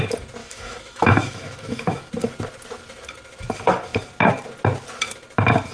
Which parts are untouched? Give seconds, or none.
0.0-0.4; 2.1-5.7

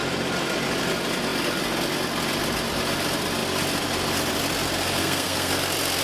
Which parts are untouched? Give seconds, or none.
0.0-5.0; 5.5-6.0

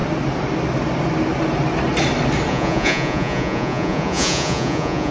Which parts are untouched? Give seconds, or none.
0.0-2.5

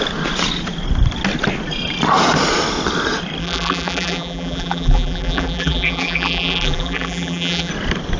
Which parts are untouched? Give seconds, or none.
0.0-3.4; 7.7-8.2

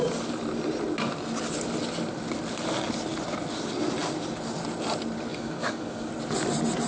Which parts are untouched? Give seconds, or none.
0.0-5.3; 6.1-6.9

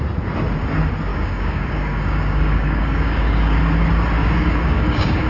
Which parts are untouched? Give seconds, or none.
0.0-1.1; 3.6-4.2

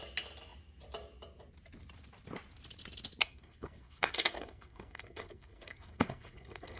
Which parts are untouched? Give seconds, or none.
0.0-3.2